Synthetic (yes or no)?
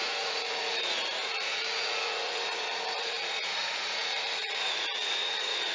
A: yes